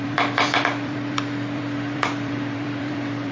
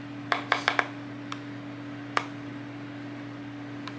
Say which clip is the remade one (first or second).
first